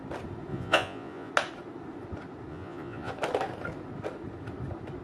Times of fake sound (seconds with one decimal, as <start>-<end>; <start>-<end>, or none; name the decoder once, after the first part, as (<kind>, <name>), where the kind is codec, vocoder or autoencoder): 0.5-1.3 (vocoder, Vocos); 2.5-3.1

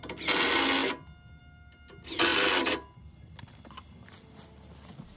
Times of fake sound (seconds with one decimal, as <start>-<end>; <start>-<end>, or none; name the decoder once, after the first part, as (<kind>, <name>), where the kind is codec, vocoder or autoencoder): none

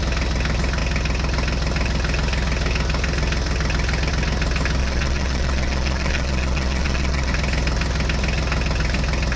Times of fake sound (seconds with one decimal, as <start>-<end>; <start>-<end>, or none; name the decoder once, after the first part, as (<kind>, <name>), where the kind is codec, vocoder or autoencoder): 4.8-7.3 (vocoder, Vocos)

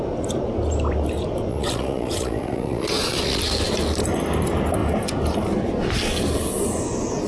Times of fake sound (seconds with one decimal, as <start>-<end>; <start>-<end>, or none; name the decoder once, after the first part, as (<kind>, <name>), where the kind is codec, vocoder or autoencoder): 1.5-3.4 (vocoder, Vocos)

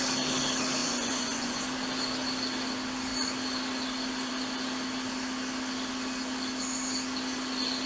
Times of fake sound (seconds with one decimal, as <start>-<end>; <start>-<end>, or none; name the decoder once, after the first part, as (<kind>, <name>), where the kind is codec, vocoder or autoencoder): 0.8-1.6 (vocoder, Vocos)

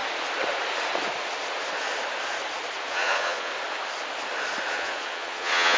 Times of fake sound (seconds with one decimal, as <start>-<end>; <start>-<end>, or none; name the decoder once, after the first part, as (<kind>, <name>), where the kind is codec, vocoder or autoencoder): 2.8-3.5 (vocoder, Vocos); 4.7-5.8

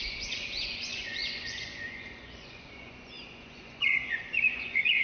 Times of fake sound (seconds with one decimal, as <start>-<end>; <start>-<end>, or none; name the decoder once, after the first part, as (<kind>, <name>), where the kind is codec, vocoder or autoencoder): 0.0-5.0 (vocoder, Vocos)